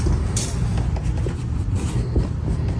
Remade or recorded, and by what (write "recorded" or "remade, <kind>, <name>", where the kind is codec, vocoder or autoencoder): recorded